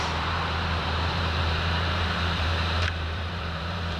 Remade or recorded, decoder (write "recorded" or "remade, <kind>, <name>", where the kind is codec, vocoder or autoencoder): remade, vocoder, BigVGAN v2